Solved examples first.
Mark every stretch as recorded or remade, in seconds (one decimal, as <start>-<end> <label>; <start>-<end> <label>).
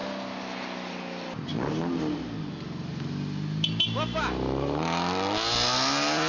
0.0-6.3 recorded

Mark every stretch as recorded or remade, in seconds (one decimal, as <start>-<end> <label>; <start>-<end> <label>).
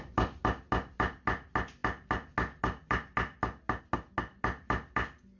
0.0-5.4 recorded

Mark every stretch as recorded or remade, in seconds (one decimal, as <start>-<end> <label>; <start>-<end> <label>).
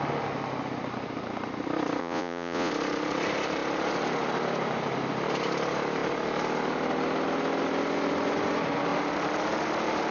0.0-2.0 recorded; 2.0-2.7 remade; 2.7-10.1 recorded